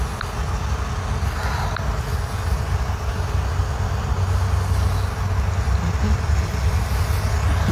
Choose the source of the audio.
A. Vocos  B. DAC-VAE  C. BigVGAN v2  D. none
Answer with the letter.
D